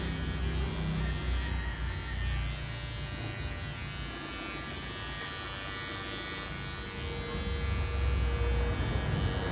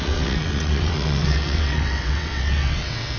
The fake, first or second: second